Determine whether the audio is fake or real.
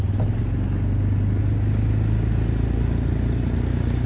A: real